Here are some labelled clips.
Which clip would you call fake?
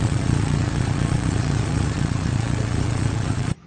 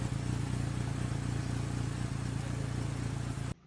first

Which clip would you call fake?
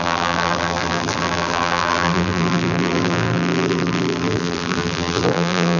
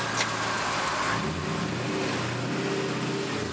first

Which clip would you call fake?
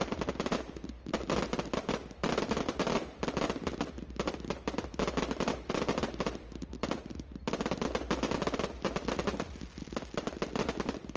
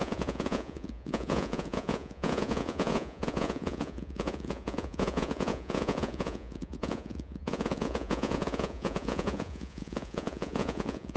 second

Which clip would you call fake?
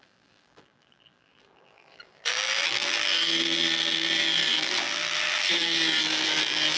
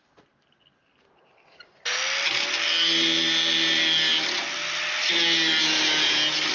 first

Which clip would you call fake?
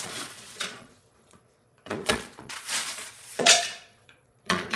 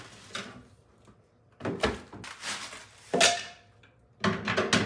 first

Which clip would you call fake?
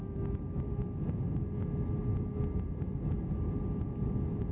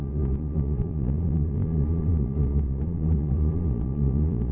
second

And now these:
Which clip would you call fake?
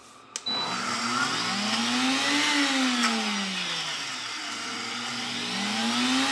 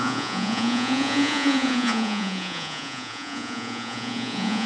second